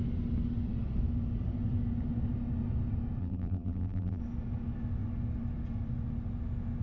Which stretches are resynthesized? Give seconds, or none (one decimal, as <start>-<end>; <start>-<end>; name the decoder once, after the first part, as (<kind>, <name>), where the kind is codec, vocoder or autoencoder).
3.2-4.2 (vocoder, BigVGAN v2)